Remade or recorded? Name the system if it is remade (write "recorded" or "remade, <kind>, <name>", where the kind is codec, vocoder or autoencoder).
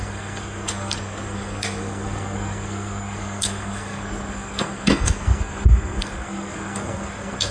remade, codec, SNAC